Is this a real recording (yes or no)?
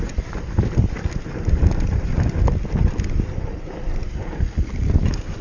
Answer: yes